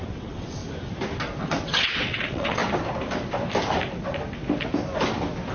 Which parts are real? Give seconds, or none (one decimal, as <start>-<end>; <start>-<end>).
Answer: 0.6-1.4; 2.6-5.5